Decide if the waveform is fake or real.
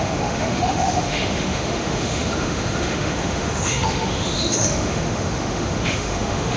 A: fake